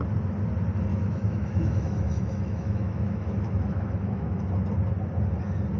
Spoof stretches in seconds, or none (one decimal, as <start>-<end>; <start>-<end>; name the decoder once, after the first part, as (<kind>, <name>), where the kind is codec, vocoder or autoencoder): 0.9-4.4 (autoencoder, DAC-VAE)